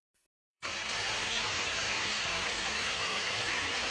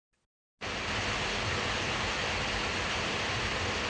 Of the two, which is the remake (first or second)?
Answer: first